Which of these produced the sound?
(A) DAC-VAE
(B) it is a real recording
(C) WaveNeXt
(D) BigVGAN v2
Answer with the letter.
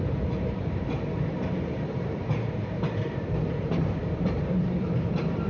D